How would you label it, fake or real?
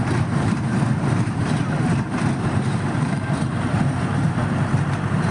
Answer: fake